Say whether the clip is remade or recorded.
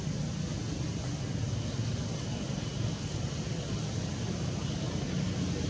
recorded